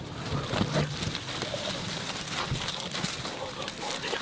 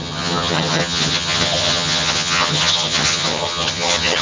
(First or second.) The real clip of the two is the first